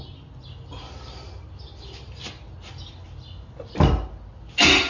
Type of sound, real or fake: real